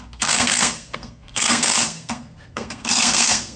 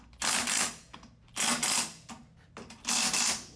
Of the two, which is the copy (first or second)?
first